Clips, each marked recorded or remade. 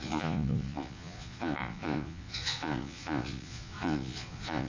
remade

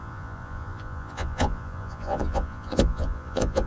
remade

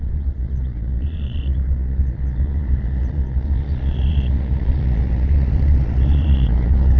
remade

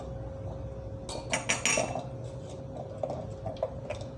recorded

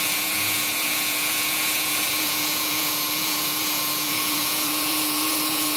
remade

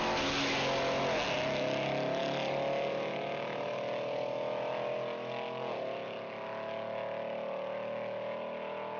recorded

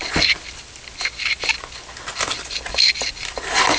recorded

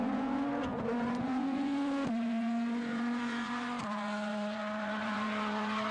remade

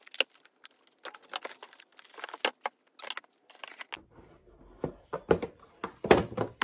recorded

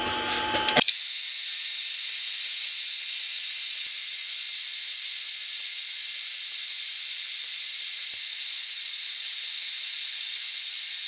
recorded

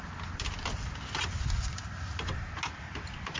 recorded